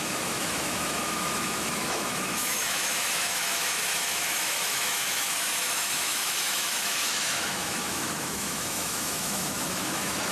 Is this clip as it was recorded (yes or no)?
no